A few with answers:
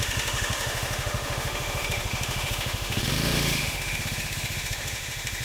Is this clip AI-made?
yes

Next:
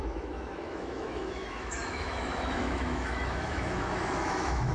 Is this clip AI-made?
yes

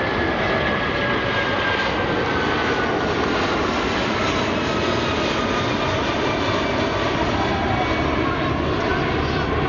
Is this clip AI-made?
no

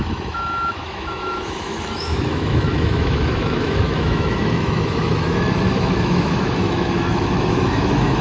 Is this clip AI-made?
yes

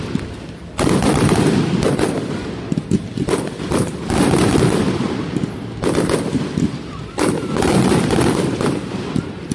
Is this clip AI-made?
no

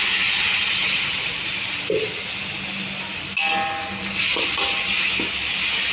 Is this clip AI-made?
no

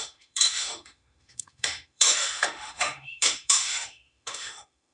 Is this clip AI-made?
yes